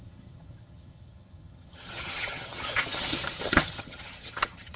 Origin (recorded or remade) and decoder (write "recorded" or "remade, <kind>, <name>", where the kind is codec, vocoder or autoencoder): remade, vocoder, HiFi-GAN